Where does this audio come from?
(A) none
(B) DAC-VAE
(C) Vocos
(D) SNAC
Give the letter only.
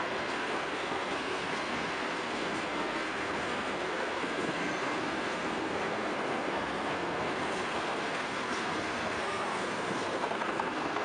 D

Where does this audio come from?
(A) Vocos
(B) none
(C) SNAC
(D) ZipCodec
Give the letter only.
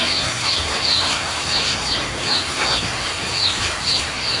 C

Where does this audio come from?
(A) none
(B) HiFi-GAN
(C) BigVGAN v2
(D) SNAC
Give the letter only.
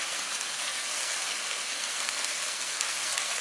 D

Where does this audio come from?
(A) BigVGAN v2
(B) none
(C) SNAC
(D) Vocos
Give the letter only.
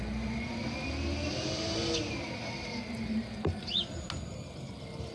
B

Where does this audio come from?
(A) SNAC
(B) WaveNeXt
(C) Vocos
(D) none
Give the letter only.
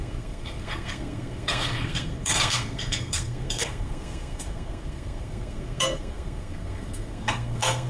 A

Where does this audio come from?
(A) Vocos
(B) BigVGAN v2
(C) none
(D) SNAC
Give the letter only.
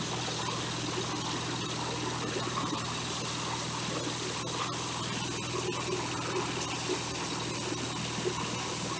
C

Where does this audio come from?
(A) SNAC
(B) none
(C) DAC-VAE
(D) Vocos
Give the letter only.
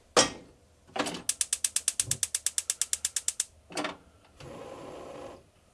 B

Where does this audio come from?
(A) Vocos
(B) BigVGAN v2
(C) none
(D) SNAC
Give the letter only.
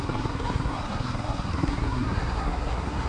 D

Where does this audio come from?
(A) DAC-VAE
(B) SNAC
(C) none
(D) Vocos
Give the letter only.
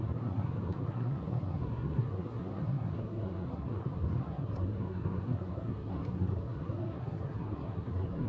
B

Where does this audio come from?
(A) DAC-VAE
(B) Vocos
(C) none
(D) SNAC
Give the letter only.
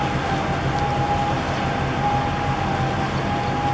C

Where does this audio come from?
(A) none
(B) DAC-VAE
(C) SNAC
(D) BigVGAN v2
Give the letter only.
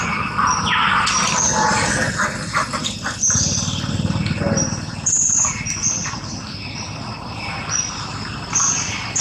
A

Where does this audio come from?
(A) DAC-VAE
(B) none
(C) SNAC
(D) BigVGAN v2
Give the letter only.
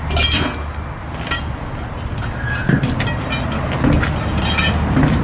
B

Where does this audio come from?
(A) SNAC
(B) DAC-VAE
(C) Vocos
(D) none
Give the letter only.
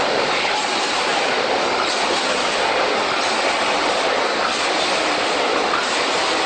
D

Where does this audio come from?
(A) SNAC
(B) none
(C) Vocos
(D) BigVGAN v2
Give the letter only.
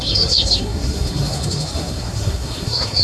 A